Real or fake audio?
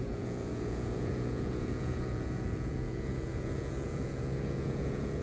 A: fake